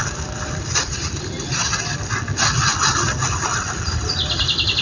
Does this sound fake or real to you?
fake